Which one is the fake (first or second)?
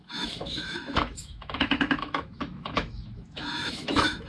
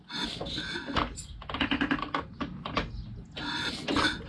first